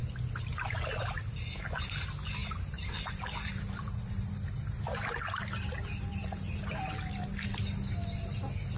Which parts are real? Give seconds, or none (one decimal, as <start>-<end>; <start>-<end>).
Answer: 0.0-2.4; 6.9-8.8